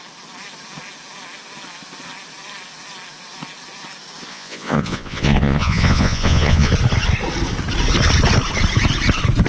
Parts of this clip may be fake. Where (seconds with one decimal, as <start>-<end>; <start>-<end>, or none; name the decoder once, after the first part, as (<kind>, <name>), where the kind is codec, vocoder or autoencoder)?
4.3-6.7 (vocoder, Vocos)